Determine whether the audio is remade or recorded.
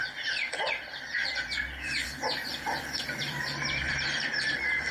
remade